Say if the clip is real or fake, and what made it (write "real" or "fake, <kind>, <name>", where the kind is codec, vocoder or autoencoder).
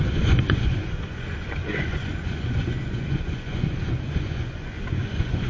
fake, vocoder, Vocos